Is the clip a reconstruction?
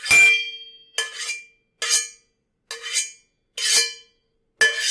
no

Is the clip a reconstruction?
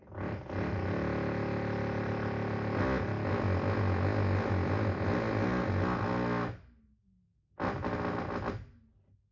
no